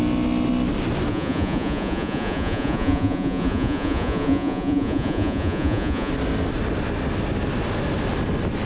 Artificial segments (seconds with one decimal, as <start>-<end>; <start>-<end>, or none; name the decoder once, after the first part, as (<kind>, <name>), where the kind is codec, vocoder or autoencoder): 1.1-6.1 (vocoder, Vocos)